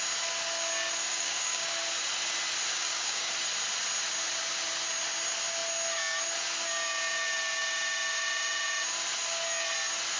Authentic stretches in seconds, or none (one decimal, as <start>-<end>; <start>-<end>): 0.0-1.1; 1.7-2.7; 3.3-10.2